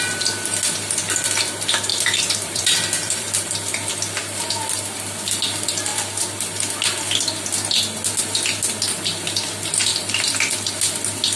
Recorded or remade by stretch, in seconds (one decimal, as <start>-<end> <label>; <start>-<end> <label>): 0.0-1.9 recorded; 1.9-3.9 remade; 3.9-9.9 recorded; 9.9-10.7 remade; 10.7-11.4 recorded

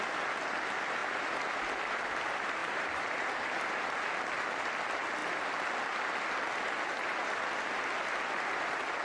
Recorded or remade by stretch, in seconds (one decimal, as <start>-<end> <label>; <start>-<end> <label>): 0.0-2.6 recorded; 2.6-3.9 remade; 3.9-9.0 recorded